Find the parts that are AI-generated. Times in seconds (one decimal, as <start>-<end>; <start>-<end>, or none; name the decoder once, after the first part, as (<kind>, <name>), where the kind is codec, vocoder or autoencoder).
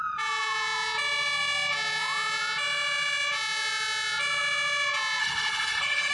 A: 5.2-6.1 (codec, HILCodec)